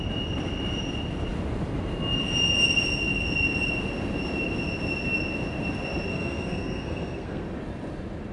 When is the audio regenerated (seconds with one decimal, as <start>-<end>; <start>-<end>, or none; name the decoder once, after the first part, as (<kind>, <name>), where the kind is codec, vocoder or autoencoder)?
6.1-7.4 (codec, SNAC)